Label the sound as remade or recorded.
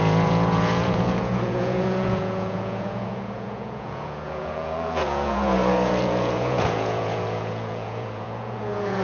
remade